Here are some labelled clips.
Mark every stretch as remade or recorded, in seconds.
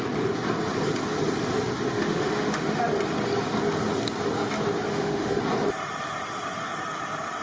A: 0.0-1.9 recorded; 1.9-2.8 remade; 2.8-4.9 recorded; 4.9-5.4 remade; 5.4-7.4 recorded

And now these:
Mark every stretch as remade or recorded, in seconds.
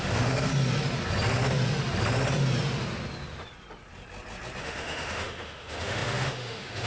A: 0.0-0.5 remade; 0.5-4.6 recorded; 4.6-6.9 remade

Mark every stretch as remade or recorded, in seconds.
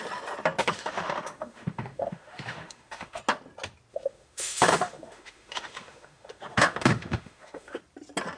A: 0.0-0.6 recorded; 0.6-3.2 remade; 3.2-3.9 recorded; 3.9-7.8 remade; 7.8-8.4 recorded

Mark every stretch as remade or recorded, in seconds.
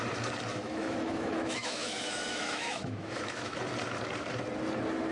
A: 0.0-0.5 recorded; 0.5-3.6 remade; 3.6-5.1 recorded